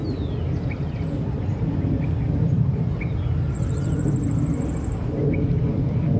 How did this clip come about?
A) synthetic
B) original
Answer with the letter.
B